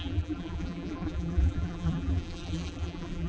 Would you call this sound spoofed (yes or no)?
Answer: yes